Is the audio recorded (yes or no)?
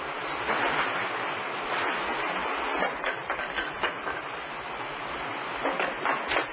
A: yes